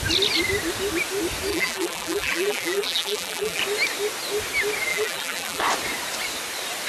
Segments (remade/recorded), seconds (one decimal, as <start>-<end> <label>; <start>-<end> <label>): 0.0-1.5 recorded; 1.5-3.6 remade; 3.6-4.9 recorded; 4.9-5.6 remade; 5.6-6.9 recorded